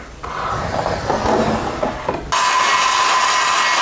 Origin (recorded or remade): recorded